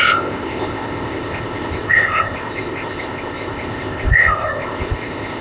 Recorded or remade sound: remade